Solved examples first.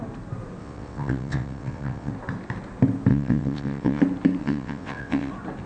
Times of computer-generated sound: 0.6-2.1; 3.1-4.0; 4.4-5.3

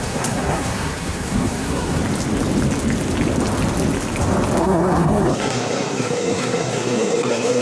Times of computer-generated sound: 0.0-2.0; 4.6-7.6

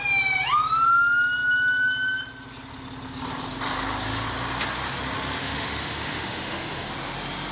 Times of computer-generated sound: 5.4-6.9

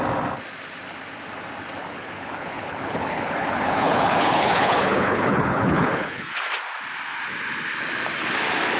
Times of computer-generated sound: 1.8-6.4

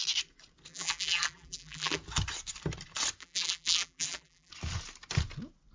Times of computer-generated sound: 0.7-2.0; 3.2-4.5